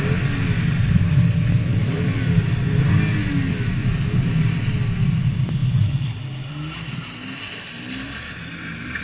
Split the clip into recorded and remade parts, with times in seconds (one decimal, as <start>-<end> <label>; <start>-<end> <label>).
0.0-1.7 recorded; 1.7-2.8 remade; 2.8-3.8 recorded; 3.8-4.5 remade; 4.5-5.6 recorded; 5.6-6.5 remade; 6.5-9.0 recorded